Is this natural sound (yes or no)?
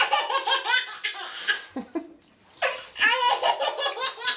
yes